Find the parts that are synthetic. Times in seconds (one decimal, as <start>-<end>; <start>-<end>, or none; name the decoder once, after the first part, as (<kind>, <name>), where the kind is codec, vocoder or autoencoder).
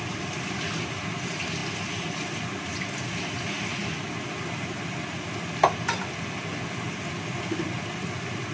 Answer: none